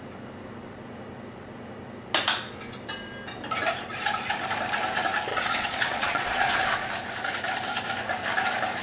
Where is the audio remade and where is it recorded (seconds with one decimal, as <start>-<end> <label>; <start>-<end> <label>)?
0.0-5.3 recorded; 5.3-6.6 remade; 6.6-8.8 recorded